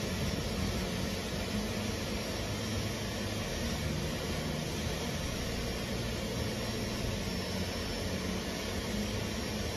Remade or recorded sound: recorded